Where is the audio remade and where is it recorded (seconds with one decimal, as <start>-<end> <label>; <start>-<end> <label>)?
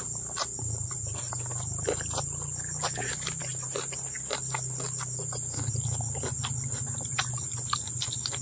0.0-8.4 recorded